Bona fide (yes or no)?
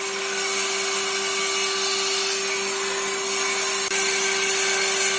yes